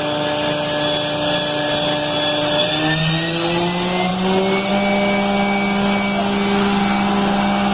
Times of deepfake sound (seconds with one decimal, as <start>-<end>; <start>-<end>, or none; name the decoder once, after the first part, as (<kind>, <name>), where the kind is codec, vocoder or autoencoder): none